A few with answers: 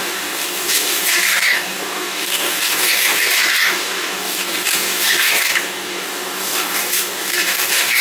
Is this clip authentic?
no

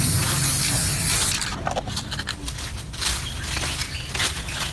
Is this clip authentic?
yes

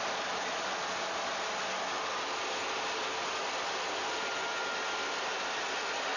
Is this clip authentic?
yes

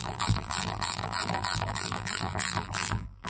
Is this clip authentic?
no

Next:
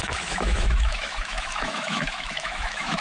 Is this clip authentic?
no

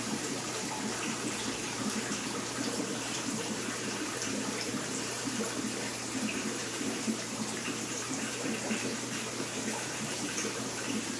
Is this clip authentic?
no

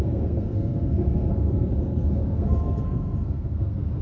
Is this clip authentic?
no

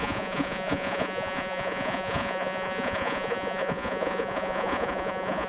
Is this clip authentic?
no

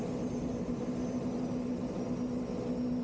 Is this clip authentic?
yes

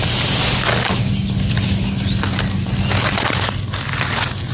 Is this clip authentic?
yes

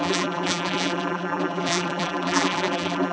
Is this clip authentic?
no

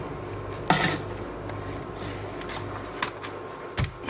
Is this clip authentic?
yes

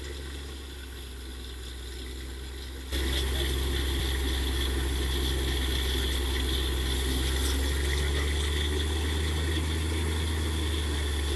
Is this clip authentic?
yes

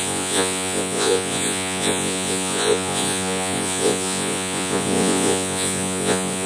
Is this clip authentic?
no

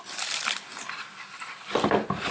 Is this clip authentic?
yes